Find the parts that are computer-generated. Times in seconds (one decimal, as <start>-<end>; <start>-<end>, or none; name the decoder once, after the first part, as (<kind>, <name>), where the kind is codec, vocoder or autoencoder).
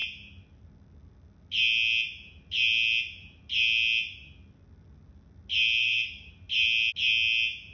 5.8-6.3 (autoencoder, DAC-VAE)